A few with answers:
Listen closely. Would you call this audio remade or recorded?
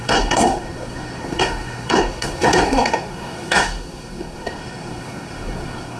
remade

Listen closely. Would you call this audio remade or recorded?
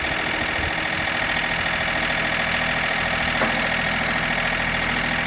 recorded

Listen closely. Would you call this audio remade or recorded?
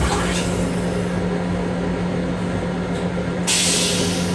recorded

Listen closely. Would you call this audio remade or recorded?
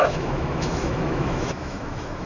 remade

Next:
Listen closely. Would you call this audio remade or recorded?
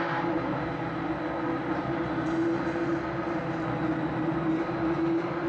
recorded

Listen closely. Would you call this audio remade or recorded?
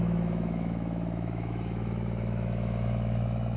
remade